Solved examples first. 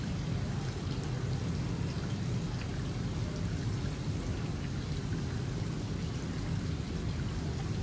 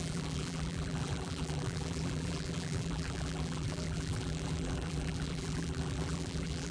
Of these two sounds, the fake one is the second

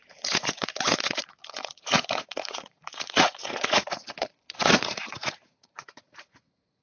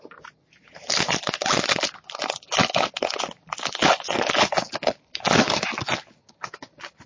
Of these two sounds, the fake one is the first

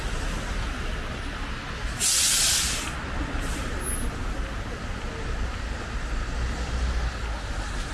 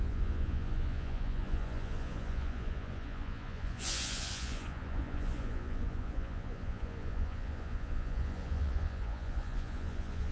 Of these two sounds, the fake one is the second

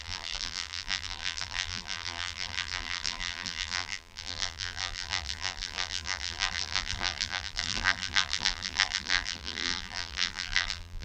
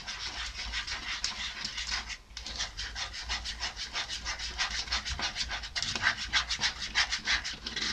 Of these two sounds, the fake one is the first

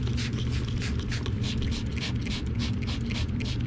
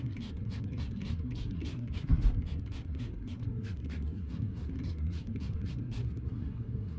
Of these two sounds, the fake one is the second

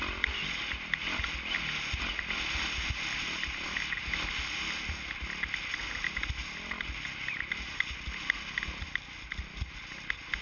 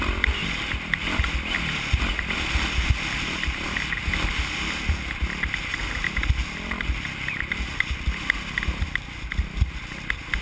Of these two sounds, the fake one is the second